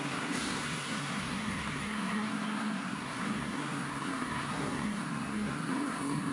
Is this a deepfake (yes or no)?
yes